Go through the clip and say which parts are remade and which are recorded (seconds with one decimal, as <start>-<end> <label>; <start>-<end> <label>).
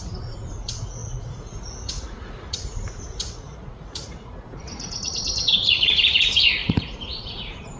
0.0-7.8 remade